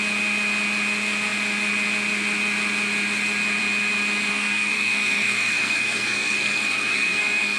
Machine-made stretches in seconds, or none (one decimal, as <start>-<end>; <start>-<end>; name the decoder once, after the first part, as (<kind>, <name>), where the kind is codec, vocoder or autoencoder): 4.3-7.6 (codec, SNAC)